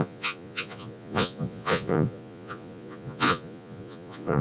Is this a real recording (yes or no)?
no